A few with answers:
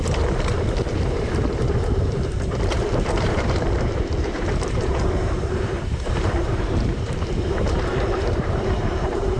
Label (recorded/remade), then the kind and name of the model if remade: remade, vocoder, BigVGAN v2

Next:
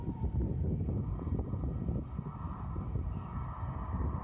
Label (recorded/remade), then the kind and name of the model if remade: recorded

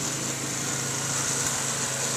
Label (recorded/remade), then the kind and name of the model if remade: recorded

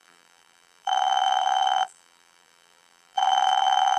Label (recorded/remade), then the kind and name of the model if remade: remade, vocoder, BigVGAN v2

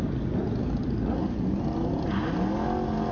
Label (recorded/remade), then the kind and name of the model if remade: recorded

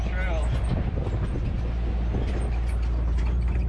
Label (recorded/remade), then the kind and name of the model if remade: recorded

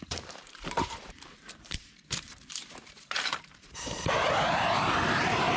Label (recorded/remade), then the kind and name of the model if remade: remade, vocoder, BigVGAN v2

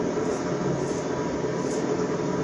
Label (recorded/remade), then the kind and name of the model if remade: remade, vocoder, BigVGAN v2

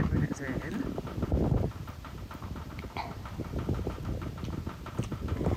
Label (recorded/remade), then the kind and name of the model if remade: remade, vocoder, BigVGAN v2